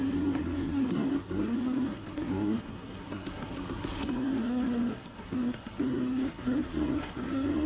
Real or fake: fake